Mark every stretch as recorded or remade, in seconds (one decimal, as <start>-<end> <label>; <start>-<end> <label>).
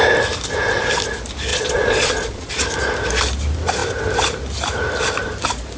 0.0-1.5 recorded; 1.5-2.5 remade; 2.5-5.8 recorded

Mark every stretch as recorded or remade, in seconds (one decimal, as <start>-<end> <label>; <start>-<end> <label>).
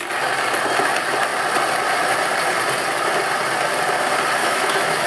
0.0-4.4 recorded; 4.4-5.1 remade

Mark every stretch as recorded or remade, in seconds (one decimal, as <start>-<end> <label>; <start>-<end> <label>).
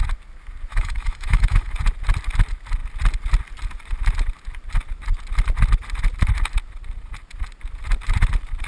0.0-0.7 recorded; 0.7-1.7 remade; 1.7-8.7 recorded